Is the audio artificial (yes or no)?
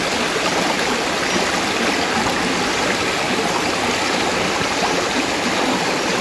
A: no